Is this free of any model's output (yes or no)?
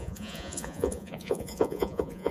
no